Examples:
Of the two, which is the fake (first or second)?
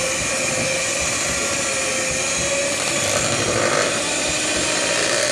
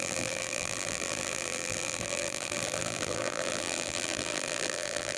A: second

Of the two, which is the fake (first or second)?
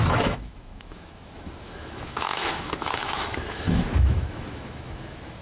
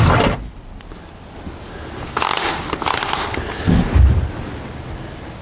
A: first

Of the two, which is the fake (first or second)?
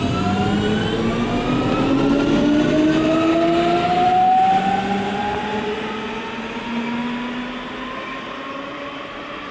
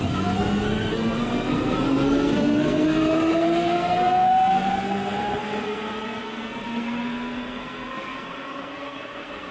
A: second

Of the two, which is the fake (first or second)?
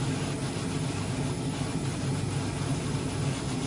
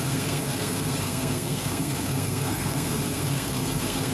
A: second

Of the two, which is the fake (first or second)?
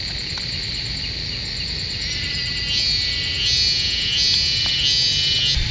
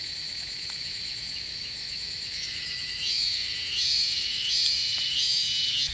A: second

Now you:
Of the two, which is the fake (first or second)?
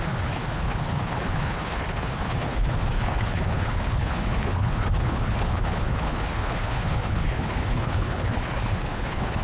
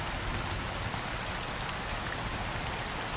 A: first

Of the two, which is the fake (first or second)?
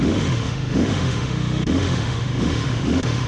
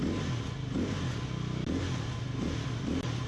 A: first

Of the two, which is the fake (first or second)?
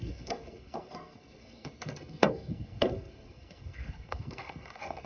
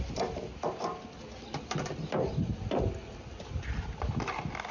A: first